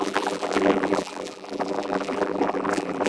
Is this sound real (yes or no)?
no